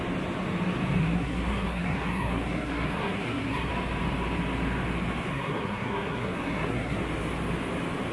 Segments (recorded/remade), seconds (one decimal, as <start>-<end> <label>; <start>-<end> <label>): 0.0-1.0 recorded; 1.0-3.7 remade; 3.7-5.3 recorded; 5.3-7.0 remade; 7.0-8.1 recorded